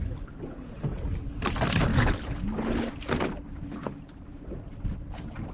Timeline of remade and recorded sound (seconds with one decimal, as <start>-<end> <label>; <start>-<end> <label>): 0.0-5.5 recorded